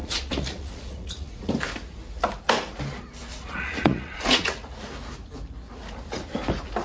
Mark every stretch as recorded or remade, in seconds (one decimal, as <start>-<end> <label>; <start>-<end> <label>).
0.0-1.5 remade; 1.5-3.3 recorded; 3.3-4.9 remade; 4.9-6.8 recorded